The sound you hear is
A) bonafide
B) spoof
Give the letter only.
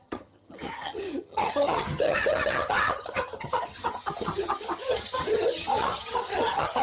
B